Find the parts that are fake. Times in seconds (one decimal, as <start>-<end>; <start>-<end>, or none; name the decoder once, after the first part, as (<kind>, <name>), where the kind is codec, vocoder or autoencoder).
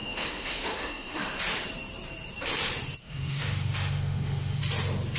0.0-1.4 (autoencoder, DAC-VAE); 3.0-4.6